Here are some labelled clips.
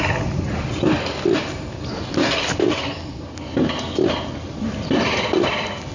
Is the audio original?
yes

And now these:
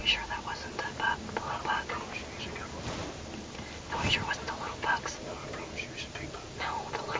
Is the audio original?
yes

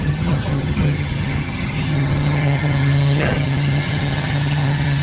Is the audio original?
no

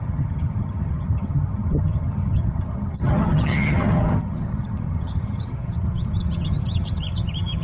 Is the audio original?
no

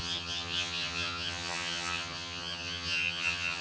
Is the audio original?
no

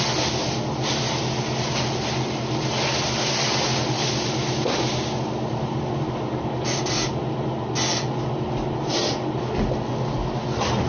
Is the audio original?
yes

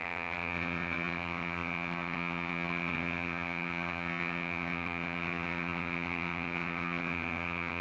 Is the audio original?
no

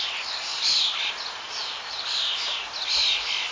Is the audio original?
yes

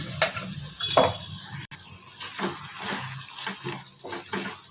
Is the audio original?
yes